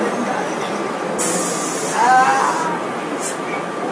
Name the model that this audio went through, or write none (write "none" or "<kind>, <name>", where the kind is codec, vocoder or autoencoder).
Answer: none